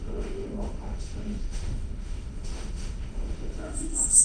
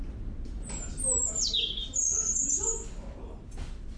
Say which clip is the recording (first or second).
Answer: second